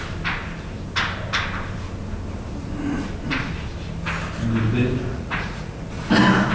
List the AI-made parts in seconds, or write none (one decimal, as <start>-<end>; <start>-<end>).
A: 5.1-5.8